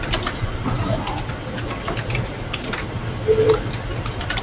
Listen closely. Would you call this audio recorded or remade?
recorded